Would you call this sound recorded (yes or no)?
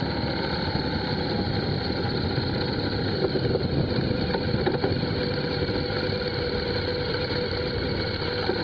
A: yes